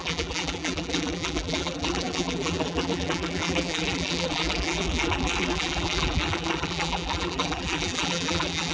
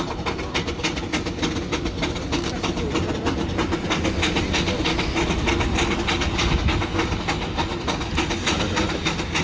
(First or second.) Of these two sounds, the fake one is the first